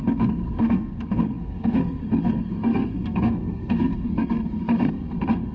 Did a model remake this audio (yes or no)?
yes